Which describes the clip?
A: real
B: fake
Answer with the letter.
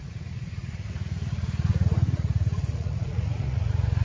B